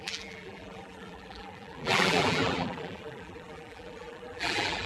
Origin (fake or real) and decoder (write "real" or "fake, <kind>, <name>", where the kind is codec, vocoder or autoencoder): fake, vocoder, BigVGAN v2